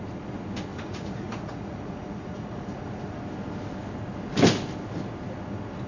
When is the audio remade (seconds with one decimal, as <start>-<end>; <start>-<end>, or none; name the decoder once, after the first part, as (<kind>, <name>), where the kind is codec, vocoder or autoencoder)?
0.7-3.2 (vocoder, Vocos)

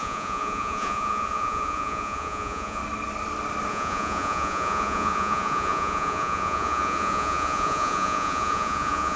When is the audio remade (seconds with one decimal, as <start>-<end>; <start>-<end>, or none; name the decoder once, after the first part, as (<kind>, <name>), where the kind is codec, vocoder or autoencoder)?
0.0-2.8 (vocoder, Vocos); 3.7-9.2